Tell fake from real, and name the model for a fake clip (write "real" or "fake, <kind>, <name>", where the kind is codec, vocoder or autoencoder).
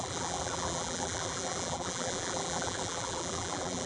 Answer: fake, vocoder, BigVGAN v2